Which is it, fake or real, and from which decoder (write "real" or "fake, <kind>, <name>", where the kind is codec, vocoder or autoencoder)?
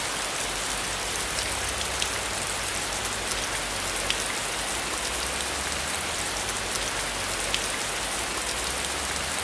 real